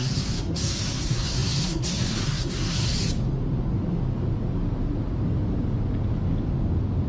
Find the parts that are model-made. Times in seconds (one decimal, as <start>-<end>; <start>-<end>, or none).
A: 0.0-2.9